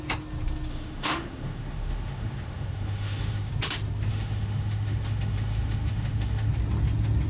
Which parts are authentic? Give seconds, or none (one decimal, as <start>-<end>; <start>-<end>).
0.0-0.7; 3.5-4.1; 6.5-7.3